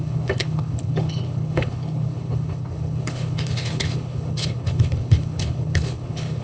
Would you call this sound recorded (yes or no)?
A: no